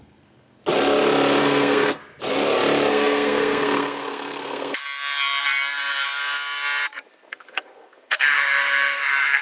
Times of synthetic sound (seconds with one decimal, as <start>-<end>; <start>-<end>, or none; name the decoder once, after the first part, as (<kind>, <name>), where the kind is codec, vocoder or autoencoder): 0.0-0.6 (codec, SNAC); 1.4-2.0; 2.9-4.8; 7.3-9.4